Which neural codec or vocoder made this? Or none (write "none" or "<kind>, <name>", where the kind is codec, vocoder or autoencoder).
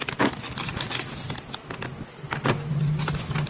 none